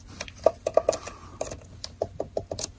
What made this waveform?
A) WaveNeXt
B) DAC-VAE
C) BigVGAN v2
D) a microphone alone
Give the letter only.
D